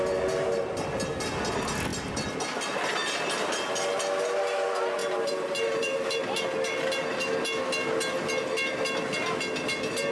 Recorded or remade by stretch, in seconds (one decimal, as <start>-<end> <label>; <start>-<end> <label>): 0.0-5.0 recorded; 5.0-6.2 remade; 6.2-10.1 recorded